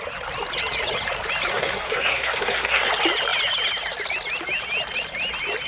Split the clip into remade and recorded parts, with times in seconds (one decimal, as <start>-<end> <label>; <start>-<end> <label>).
0.0-1.5 recorded; 1.5-2.9 remade; 2.9-5.7 recorded